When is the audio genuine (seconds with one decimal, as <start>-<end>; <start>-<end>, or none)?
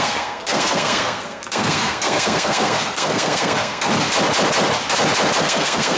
3.9-5.4